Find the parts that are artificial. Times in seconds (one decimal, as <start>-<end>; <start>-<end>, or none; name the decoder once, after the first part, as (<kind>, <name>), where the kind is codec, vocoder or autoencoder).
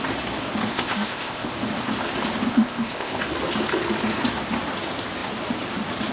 0.7-1.5 (codec, ZipCodec); 2.5-3.2